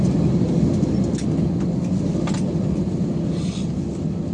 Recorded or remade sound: recorded